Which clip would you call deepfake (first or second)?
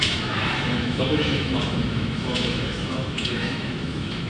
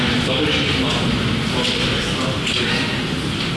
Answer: first